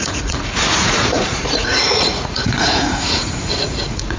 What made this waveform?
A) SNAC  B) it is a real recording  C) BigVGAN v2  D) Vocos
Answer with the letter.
D